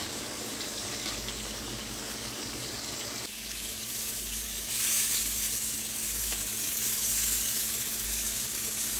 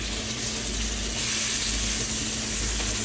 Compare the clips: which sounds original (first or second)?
second